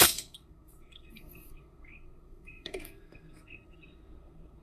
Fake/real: fake